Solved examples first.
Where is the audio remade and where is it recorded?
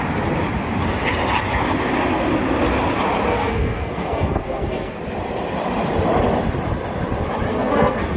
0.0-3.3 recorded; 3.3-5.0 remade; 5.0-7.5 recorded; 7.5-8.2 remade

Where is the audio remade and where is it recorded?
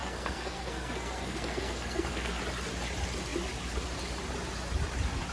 0.0-2.4 remade; 2.4-5.3 recorded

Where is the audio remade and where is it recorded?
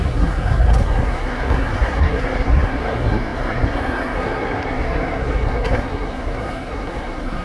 0.0-7.4 remade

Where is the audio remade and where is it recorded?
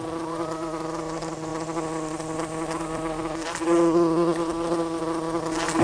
0.0-5.8 recorded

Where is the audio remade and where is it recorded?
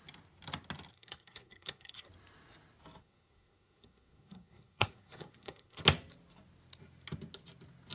0.0-0.9 recorded; 0.9-2.1 remade; 2.1-3.0 recorded; 3.0-5.8 remade; 5.8-7.9 recorded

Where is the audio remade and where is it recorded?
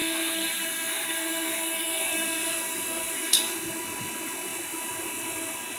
0.0-3.5 remade; 3.5-5.8 recorded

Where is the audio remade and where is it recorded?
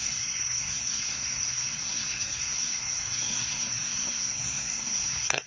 0.0-5.5 remade